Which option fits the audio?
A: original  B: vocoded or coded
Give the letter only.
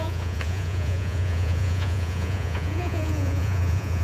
B